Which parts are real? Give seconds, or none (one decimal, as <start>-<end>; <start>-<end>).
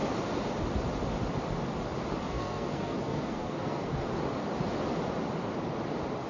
0.0-2.2; 4.1-6.3